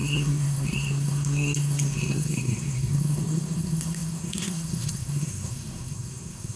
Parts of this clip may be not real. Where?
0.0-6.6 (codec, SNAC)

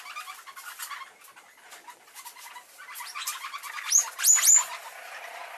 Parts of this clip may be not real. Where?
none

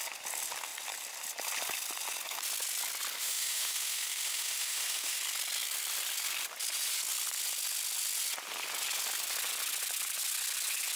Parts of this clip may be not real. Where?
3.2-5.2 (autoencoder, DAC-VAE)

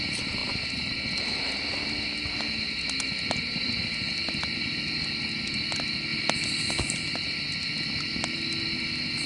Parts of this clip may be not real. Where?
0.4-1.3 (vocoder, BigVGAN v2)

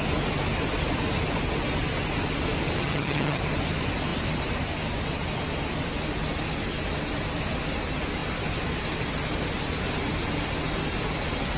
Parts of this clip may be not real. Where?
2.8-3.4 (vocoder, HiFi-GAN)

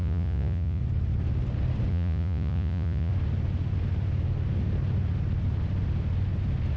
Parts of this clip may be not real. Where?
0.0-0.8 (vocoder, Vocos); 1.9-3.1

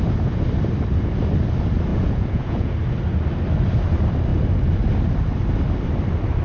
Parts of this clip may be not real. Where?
1.9-2.7 (vocoder, Vocos)

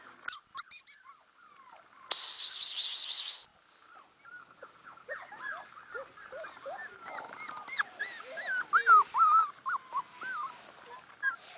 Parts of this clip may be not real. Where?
none